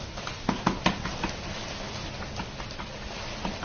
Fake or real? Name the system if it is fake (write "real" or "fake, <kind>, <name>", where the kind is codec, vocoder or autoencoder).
real